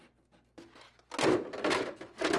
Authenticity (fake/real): real